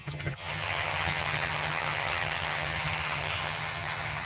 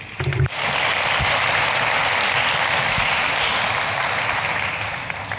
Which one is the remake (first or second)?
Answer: first